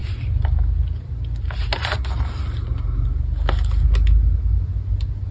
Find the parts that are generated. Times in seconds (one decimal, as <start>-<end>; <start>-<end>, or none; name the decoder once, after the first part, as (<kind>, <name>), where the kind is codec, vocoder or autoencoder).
none